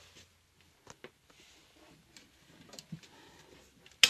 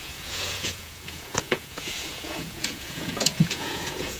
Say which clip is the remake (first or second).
second